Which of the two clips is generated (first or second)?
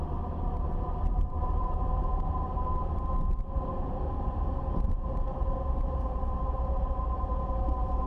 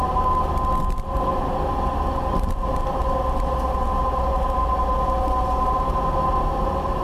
first